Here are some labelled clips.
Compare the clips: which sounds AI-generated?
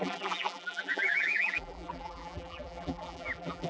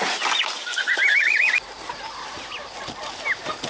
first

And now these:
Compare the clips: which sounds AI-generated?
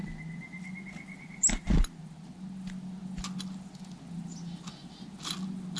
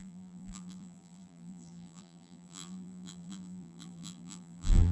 second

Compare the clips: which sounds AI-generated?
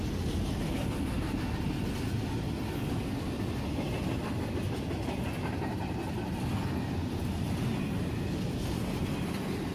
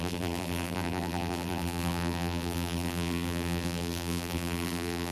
second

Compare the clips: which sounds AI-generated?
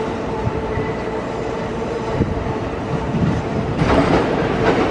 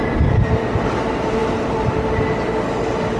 first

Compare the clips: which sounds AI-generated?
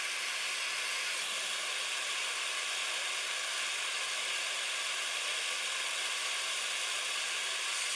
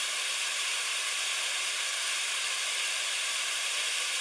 second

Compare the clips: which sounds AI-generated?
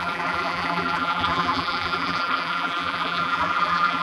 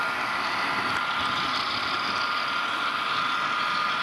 first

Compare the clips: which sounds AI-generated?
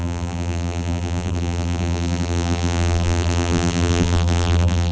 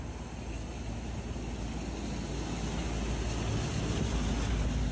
first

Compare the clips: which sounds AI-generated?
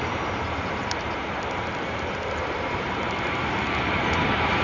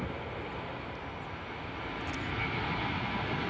first